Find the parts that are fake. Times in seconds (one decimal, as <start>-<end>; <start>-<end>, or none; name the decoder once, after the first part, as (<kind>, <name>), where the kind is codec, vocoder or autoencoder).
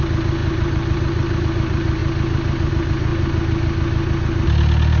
0.0-2.0 (vocoder, BigVGAN v2); 2.7-3.1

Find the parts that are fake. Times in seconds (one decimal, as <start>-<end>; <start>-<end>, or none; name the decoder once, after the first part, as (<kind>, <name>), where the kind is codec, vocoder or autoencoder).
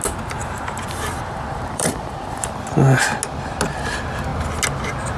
0.4-2.1 (vocoder, BigVGAN v2)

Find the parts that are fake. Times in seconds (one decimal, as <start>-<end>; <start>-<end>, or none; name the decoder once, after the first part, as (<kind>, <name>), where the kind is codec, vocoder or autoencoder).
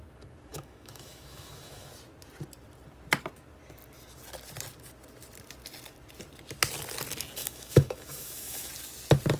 0.5-1.9 (autoencoder, DAC-VAE); 7.4-8.7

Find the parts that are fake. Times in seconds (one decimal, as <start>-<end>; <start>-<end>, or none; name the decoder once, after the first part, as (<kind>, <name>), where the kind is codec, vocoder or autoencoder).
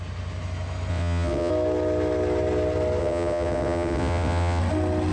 0.9-1.5 (vocoder, WaveNeXt); 3.0-4.6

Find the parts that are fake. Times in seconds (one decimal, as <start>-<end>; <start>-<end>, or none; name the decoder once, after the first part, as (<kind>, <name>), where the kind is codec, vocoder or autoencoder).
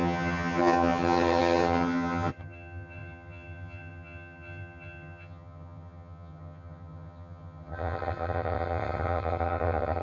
0.0-10.0 (vocoder, HiFi-GAN)